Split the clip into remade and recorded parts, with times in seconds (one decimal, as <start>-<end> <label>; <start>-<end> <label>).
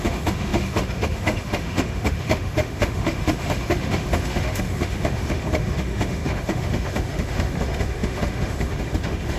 0.0-9.4 remade